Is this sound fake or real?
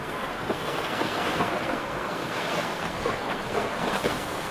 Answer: fake